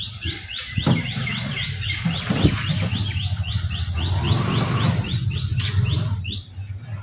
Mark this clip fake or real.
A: fake